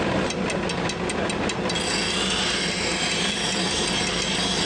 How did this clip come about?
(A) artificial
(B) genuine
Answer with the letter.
B